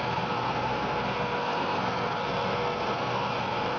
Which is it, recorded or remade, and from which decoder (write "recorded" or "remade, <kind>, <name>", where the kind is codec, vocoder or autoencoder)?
remade, codec, SNAC